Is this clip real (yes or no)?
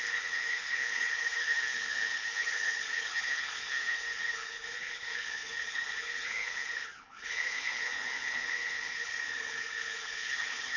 no